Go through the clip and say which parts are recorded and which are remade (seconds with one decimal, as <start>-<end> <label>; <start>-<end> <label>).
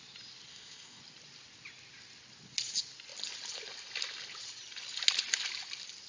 0.0-0.5 recorded; 0.5-1.0 remade; 1.0-6.1 recorded